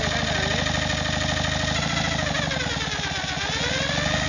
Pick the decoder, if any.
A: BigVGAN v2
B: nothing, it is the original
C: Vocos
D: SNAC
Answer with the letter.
B